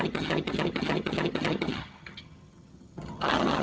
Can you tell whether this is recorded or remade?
remade